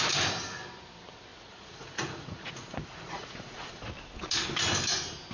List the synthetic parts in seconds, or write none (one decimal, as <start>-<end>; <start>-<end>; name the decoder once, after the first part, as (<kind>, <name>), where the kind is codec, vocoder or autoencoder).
1.3-3.9 (vocoder, Vocos)